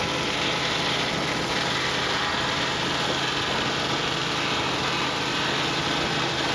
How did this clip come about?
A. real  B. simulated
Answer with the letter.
A